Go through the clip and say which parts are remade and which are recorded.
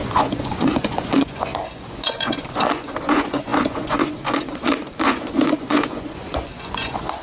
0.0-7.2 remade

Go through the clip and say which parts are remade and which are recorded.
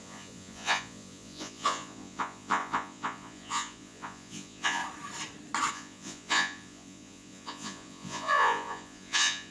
0.0-4.8 remade; 4.8-5.7 recorded; 5.7-9.5 remade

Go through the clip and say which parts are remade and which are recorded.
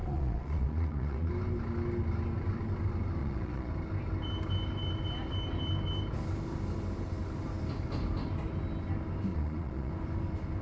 0.0-1.3 remade; 1.3-3.2 recorded; 3.2-3.7 remade; 3.7-9.3 recorded; 9.3-9.9 remade; 9.9-10.6 recorded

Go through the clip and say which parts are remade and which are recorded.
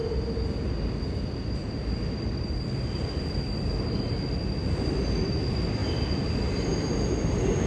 0.0-7.7 recorded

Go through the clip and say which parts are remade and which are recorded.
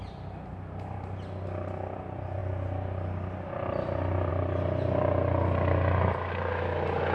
0.0-7.1 recorded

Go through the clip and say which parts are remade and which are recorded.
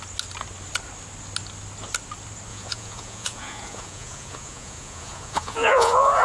0.0-2.5 recorded; 2.5-6.2 remade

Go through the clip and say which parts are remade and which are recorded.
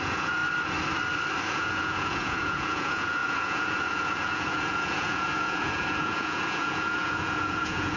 0.0-0.4 remade; 0.4-1.5 recorded; 1.5-8.0 remade